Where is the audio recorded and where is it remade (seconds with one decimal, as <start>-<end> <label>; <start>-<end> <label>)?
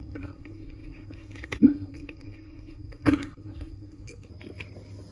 0.0-4.3 remade; 4.3-5.1 recorded